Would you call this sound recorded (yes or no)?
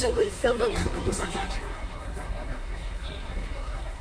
no